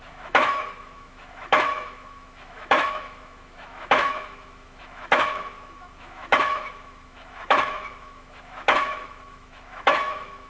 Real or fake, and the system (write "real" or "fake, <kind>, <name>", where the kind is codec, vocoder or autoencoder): fake, autoencoder, DAC-VAE